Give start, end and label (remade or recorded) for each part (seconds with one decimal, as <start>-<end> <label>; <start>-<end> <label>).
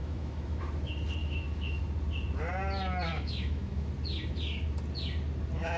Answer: 0.0-0.6 remade; 0.6-1.2 recorded; 1.2-1.8 remade; 1.8-3.1 recorded; 3.1-3.9 remade; 3.9-5.8 recorded